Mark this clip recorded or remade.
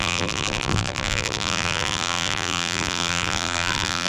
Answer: remade